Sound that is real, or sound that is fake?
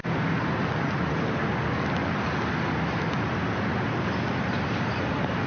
real